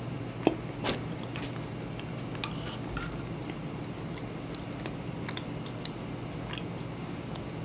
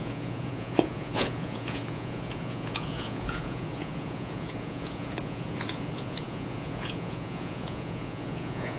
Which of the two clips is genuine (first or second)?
first